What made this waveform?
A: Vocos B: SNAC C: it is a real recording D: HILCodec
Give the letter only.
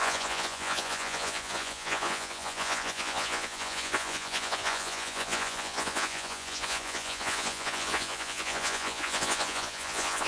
A